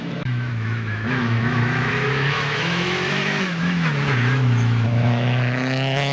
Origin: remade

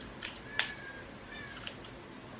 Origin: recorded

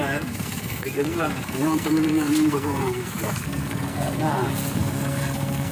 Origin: remade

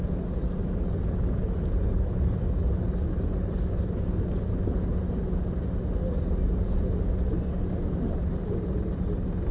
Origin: recorded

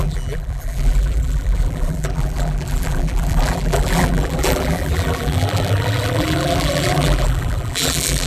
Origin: remade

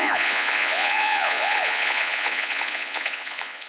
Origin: remade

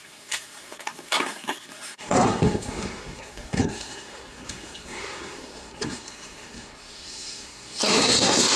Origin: remade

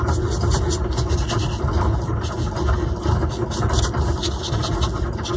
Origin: recorded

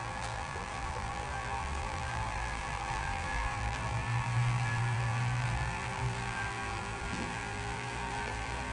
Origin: remade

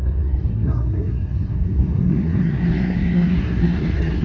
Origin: remade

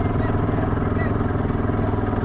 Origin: recorded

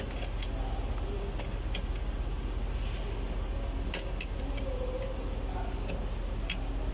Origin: recorded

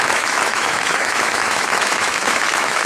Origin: remade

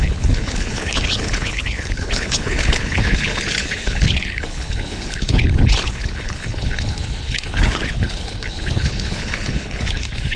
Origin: remade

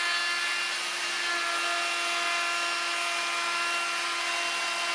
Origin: recorded